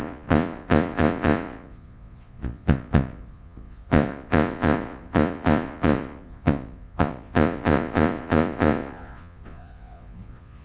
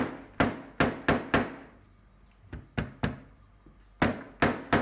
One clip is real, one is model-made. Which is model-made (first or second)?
first